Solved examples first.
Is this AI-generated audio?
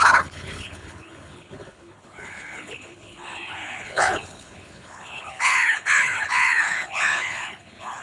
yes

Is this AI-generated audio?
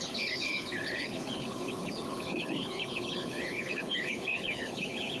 yes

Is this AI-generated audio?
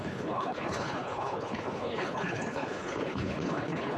yes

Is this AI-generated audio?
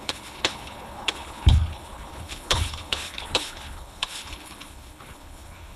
yes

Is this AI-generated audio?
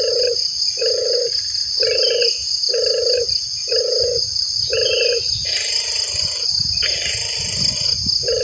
no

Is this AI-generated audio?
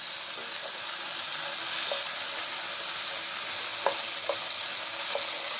no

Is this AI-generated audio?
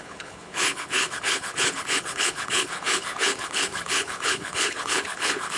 yes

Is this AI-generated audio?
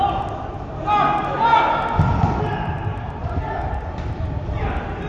no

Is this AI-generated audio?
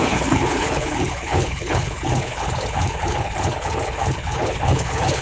yes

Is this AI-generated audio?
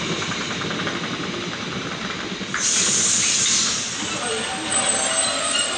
no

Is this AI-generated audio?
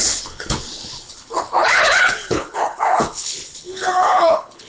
yes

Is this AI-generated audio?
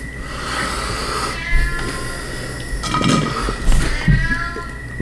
no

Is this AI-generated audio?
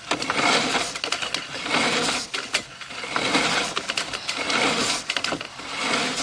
no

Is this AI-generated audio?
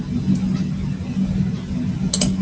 no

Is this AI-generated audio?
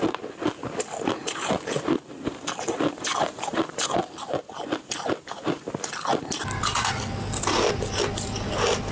no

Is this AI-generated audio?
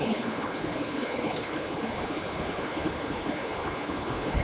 yes